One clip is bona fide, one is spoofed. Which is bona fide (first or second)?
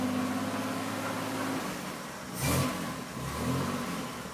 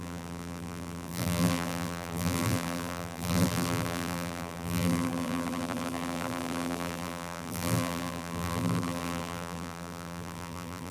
first